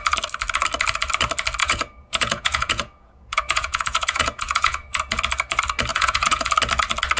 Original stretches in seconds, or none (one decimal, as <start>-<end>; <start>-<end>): 0.0-1.6; 5.0-5.9; 6.5-7.2